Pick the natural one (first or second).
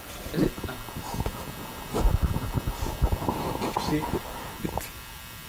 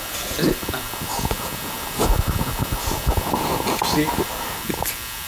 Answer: first